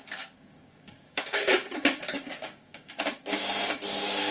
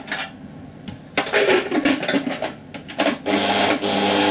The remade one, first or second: first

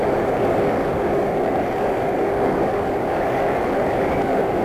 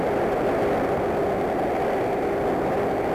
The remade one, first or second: first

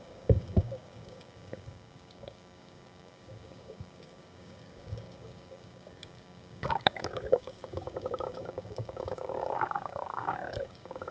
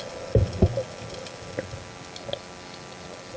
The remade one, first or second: first